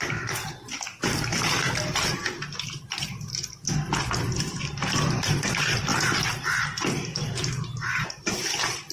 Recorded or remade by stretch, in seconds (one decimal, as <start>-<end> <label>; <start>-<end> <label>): 0.0-0.9 remade; 0.9-4.2 recorded; 4.2-5.9 remade; 5.9-6.6 recorded; 6.6-7.1 remade; 7.1-8.3 recorded; 8.3-8.9 remade